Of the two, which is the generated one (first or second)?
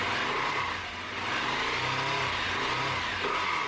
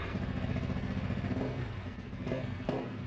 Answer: second